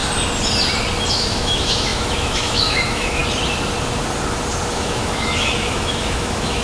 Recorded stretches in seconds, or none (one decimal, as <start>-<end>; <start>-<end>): 0.0-1.1; 3.2-4.7